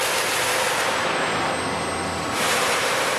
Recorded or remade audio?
recorded